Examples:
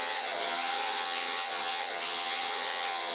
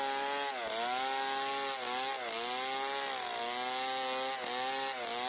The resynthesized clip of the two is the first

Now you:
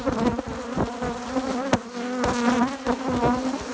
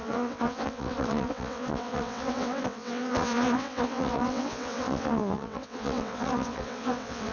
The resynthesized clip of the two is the second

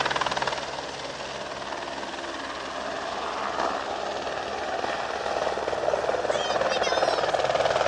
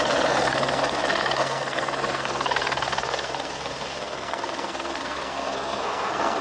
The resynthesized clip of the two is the second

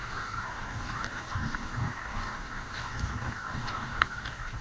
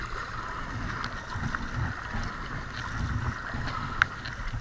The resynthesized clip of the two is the first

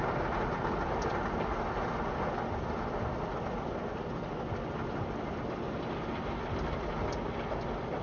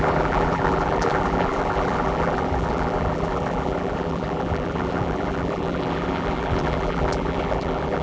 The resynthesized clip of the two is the second